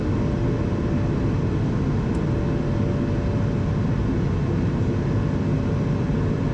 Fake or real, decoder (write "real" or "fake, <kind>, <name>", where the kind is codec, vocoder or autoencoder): real